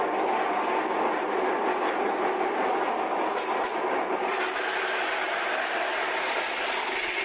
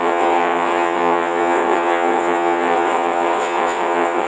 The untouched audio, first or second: first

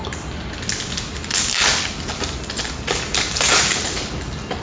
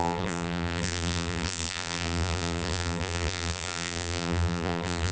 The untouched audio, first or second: first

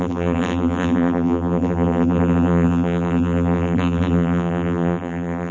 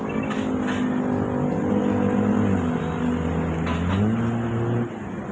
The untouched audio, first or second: second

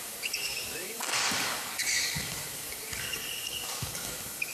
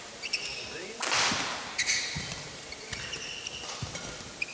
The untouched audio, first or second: second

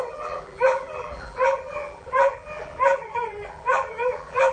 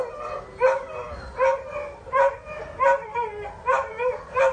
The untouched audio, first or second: second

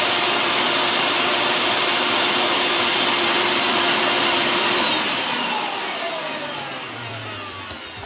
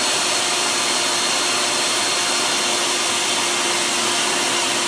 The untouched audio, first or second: second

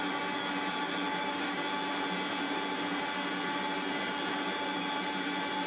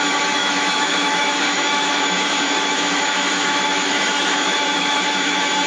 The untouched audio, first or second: first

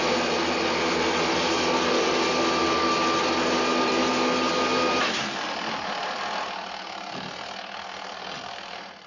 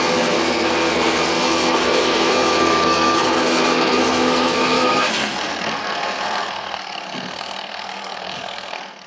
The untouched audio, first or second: first